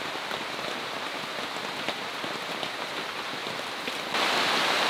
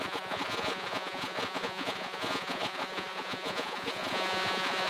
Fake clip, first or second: second